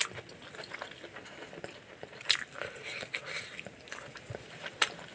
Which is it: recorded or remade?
recorded